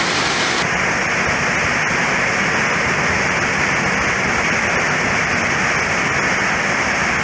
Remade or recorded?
recorded